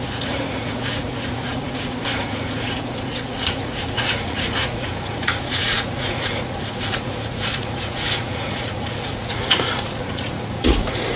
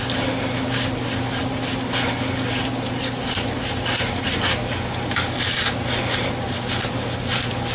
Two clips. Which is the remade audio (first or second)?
first